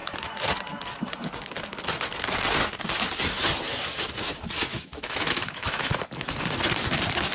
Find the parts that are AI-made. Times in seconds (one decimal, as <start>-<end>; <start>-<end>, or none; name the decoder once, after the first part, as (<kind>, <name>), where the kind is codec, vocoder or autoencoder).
4.7-5.9 (autoencoder, DAC-VAE)